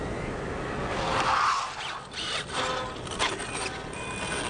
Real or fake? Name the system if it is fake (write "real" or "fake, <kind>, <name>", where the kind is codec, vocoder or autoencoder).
real